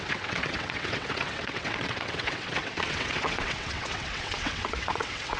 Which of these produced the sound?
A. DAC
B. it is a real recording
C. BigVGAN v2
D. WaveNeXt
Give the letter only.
D